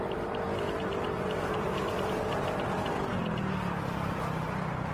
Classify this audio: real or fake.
real